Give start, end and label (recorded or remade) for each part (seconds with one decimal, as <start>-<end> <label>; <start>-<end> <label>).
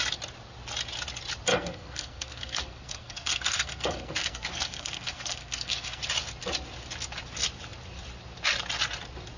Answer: 0.0-1.5 recorded; 1.5-6.0 remade; 6.0-9.4 recorded